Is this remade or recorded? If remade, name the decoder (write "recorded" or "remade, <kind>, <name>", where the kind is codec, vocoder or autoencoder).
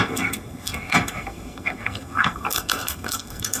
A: remade, codec, SNAC